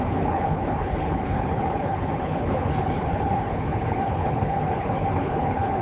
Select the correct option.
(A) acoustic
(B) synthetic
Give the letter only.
B